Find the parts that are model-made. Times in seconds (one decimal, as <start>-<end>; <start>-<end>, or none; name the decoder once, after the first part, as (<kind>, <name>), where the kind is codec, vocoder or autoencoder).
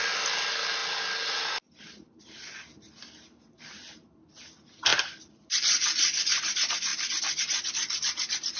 4.9-6.2 (vocoder, BigVGAN v2)